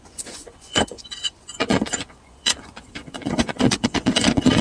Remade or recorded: remade